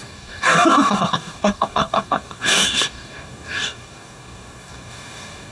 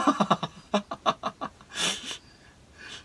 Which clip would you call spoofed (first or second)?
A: first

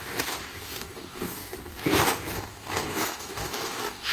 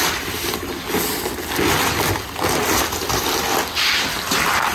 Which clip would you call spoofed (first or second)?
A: first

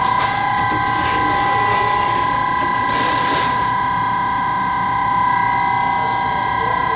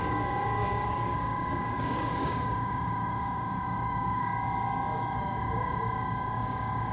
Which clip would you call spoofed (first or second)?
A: second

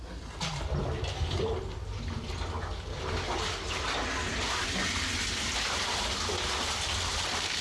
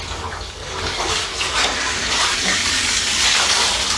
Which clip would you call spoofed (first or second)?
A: second